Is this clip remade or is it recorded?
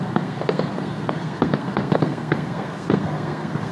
remade